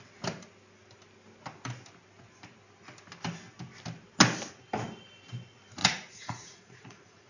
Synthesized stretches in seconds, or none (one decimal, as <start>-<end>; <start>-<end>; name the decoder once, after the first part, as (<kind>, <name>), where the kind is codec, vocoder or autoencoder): 5.8-7.3 (vocoder, Vocos)